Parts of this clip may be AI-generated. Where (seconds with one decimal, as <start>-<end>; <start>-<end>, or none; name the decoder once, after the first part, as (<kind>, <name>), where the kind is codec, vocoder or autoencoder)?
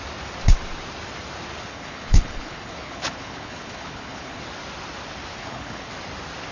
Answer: 1.7-4.4 (codec, HILCodec); 5.4-5.9